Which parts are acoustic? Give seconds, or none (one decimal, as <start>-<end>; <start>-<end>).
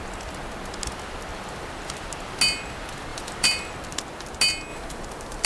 0.0-1.3; 1.9-3.1; 3.7-4.7